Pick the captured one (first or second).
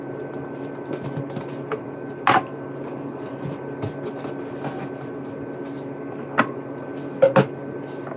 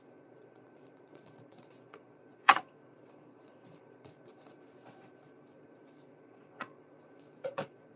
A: first